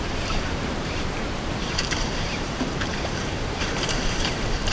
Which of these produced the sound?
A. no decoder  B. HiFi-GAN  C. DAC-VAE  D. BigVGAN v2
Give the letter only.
D